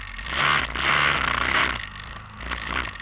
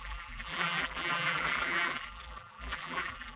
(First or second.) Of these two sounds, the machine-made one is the second